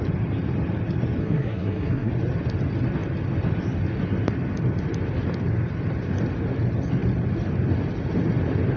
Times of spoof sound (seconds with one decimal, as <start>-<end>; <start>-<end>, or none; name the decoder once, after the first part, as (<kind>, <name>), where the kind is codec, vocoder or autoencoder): 1.2-2.1 (codec, SNAC)

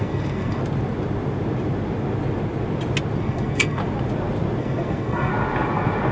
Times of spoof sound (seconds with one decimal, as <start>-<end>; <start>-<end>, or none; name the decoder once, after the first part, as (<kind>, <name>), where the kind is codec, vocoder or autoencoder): 0.0-0.6 (codec, SNAC); 3.2-3.8; 4.6-5.3

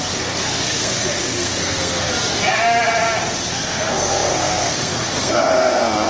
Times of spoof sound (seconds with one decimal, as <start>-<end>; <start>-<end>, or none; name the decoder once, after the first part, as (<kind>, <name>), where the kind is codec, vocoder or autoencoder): 0.0-2.1 (codec, SNAC); 3.5-6.1

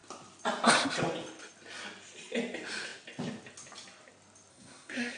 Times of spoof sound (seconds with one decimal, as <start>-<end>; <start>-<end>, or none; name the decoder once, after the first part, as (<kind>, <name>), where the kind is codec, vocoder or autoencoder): 4.5-5.2 (codec, SNAC)

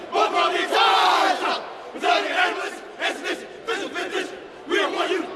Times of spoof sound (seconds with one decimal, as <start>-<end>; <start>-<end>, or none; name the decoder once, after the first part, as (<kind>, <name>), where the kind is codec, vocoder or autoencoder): none

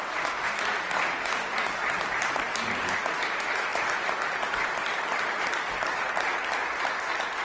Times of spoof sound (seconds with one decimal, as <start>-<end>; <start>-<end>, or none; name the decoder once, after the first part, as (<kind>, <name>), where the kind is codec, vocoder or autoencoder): none

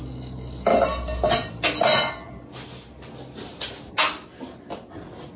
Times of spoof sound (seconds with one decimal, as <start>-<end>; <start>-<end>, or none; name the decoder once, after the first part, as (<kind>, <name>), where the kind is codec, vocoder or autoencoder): none

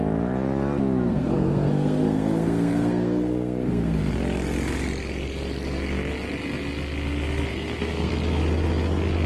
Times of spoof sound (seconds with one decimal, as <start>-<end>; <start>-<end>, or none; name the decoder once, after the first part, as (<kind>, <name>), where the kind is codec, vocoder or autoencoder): 1.1-4.1 (codec, SNAC); 7.5-8.1